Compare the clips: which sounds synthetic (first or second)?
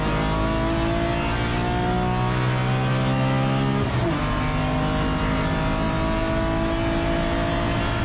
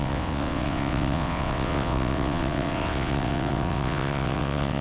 second